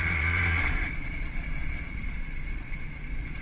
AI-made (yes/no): yes